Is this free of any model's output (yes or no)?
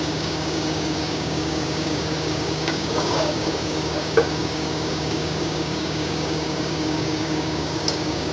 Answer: no